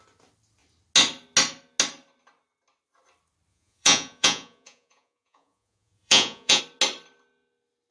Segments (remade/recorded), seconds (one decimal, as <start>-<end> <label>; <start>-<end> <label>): 0.0-3.5 recorded; 3.5-6.6 remade; 6.6-7.9 recorded